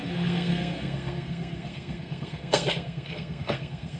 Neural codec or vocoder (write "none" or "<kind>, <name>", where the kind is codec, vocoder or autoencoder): codec, SNAC